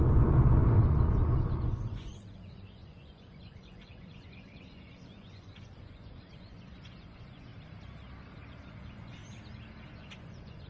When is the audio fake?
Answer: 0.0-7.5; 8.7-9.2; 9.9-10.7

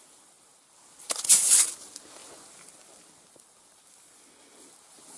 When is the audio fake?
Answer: none

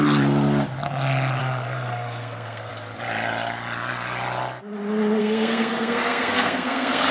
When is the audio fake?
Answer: 1.4-2.7; 5.2-7.1

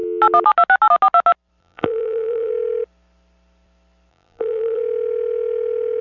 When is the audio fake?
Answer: 1.6-2.5; 4.1-4.8

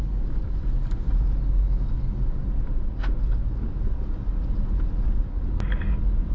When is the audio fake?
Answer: none

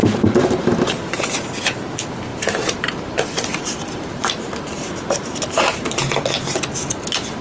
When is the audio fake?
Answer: 0.0-1.2; 2.3-6.0

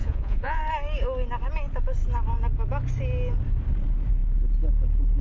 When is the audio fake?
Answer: 0.0-0.6

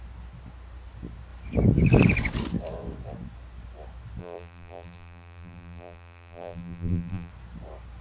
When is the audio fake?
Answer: 4.2-7.3